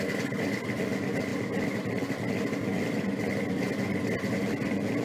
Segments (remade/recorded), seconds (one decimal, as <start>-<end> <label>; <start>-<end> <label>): 0.0-5.0 recorded